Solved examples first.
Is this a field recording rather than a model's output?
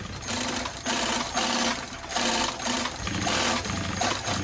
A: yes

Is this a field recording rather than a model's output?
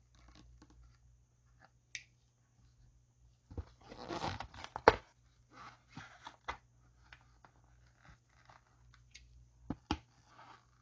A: yes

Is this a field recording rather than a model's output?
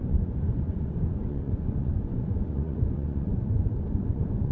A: no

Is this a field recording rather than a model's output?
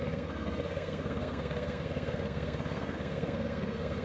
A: no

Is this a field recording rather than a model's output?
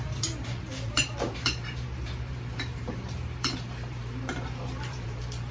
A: no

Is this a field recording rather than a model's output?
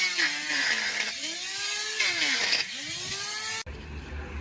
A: yes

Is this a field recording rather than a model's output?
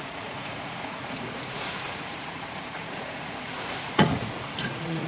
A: no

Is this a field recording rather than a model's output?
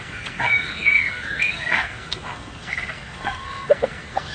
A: no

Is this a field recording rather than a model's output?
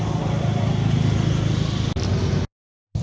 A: yes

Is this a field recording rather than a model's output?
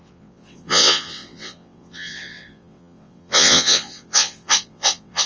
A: no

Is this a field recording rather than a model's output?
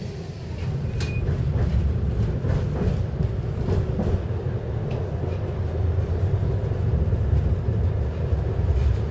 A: yes